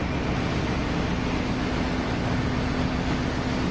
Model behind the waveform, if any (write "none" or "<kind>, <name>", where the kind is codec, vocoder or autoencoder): none